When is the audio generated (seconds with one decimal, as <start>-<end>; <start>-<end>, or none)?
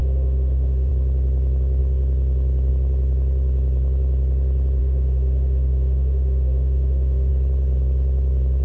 0.0-0.9; 4.8-7.3